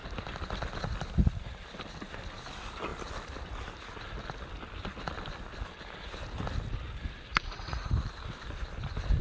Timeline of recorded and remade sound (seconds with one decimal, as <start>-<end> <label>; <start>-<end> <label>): 0.0-7.3 recorded; 7.3-7.9 remade; 7.9-9.2 recorded